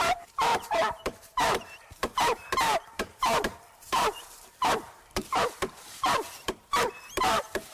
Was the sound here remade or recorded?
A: remade